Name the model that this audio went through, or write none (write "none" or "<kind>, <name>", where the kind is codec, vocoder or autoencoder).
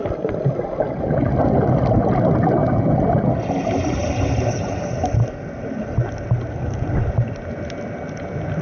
none